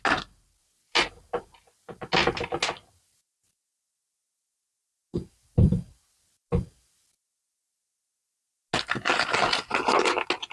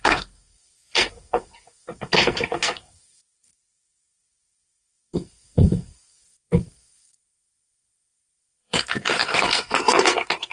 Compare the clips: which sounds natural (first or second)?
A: first